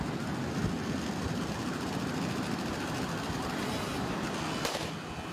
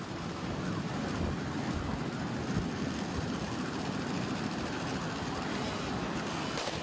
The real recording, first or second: first